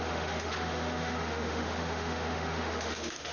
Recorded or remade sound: remade